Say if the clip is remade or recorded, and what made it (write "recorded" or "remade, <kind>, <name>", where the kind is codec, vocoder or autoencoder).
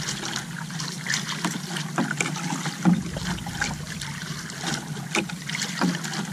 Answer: recorded